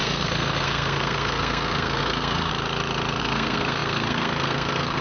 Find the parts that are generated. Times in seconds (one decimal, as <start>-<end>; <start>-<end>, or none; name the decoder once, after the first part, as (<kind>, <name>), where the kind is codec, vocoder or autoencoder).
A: 0.0-2.5 (codec, SNAC); 3.2-5.0